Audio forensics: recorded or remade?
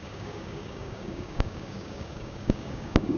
remade